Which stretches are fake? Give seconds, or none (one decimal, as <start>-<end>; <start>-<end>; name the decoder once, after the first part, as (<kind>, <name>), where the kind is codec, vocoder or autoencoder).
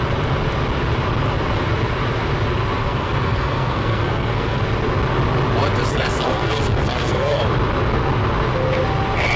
2.8-4.6 (codec, SNAC); 5.9-7.4